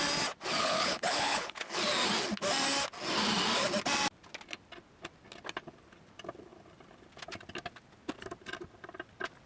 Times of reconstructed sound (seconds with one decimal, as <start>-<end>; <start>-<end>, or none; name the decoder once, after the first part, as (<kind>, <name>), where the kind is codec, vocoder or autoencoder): 0.6-1.8 (codec, HILCodec)